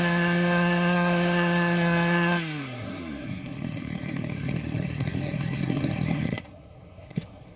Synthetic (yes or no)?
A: yes